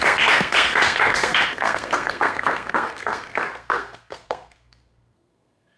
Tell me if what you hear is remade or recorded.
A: remade